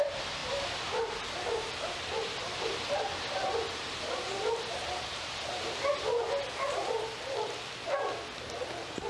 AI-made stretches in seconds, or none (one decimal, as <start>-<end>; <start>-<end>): 0.4-1.7